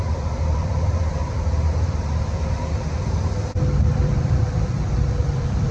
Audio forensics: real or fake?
fake